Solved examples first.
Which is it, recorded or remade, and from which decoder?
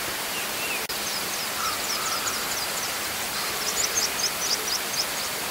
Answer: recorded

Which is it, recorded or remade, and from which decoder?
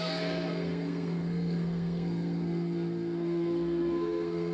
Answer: remade, codec, SNAC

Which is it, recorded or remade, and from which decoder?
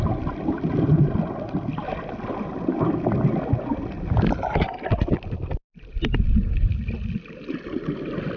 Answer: recorded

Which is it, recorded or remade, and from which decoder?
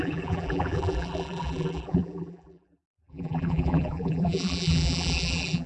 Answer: remade, vocoder, BigVGAN v2